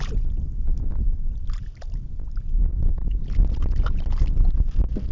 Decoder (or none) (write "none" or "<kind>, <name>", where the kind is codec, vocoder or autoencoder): none